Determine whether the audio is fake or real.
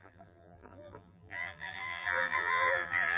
fake